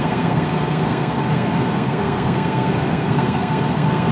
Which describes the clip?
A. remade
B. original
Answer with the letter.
A